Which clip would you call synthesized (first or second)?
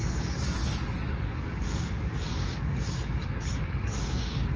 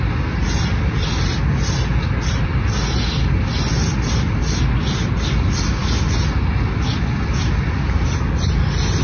first